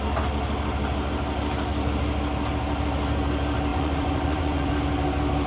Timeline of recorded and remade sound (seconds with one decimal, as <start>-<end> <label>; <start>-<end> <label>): 0.0-3.7 recorded; 3.7-4.7 remade; 4.7-5.5 recorded